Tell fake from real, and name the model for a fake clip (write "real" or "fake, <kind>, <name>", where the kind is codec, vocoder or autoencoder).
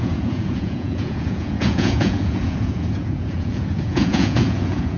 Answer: fake, vocoder, Vocos